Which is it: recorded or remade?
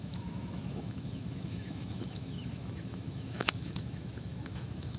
remade